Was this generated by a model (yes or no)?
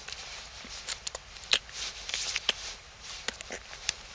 yes